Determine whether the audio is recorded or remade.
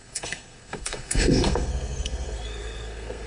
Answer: remade